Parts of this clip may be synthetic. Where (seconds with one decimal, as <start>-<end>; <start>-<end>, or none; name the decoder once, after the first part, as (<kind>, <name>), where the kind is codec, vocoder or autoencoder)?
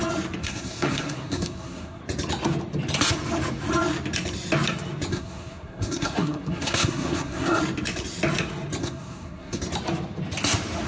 0.4-2.0 (codec, SNAC); 5.1-7.6; 8.8-9.6